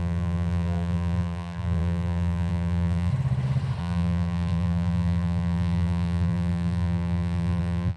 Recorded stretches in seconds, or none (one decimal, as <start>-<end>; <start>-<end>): 3.1-3.8